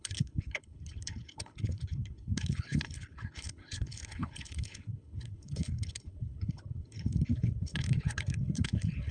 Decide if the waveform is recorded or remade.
remade